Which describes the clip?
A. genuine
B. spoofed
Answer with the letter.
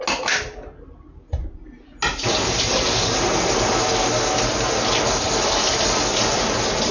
A